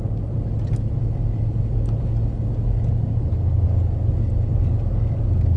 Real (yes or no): yes